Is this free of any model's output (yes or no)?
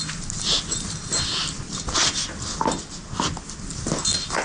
yes